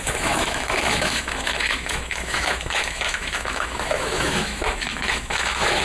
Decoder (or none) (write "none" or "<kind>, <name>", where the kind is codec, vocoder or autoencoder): autoencoder, DAC-VAE